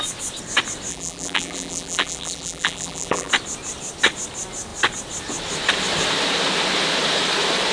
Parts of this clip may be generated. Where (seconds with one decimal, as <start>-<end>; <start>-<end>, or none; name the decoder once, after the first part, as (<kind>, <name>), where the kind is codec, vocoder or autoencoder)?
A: 0.9-3.3 (vocoder, BigVGAN v2)

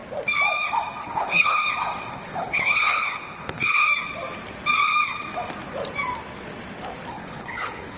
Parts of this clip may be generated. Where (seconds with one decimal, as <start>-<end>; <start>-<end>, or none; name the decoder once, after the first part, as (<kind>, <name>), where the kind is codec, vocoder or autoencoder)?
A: 1.0-1.6 (codec, HILCodec); 2.1-3.8; 7.1-8.0

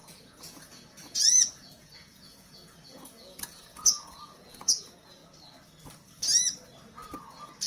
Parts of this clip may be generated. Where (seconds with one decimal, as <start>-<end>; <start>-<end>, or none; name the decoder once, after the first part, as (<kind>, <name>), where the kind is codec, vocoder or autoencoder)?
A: 0.0-5.2 (vocoder, Vocos)